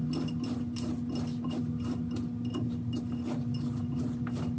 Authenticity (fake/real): real